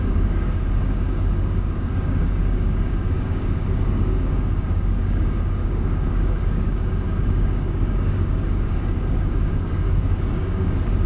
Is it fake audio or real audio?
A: fake